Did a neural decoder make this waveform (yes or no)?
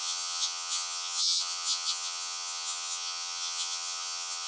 yes